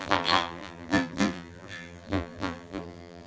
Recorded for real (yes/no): no